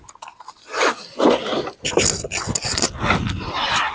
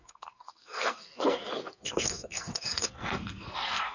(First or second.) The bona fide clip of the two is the first